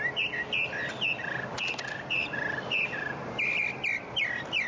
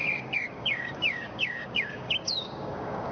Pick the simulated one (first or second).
second